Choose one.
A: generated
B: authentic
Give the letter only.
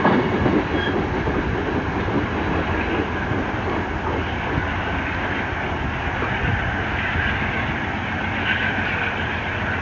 B